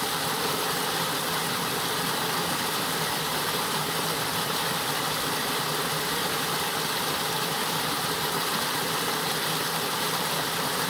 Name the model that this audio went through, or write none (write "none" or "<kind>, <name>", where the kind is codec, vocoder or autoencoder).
none